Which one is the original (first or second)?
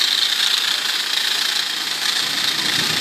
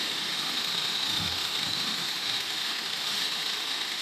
first